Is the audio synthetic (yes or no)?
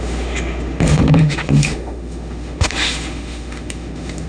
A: yes